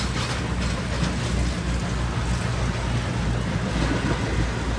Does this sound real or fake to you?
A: real